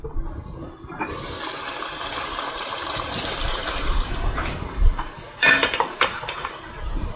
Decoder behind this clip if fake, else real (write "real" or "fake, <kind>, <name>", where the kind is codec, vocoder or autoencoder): fake, vocoder, BigVGAN v2